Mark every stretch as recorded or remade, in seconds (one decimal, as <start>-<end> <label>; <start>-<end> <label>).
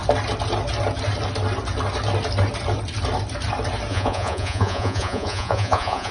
0.0-3.9 recorded; 3.9-6.1 remade